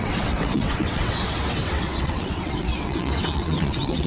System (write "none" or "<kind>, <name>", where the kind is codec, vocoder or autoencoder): vocoder, WaveNeXt